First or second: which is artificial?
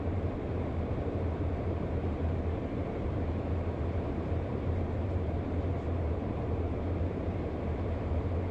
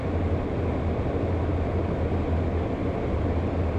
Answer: first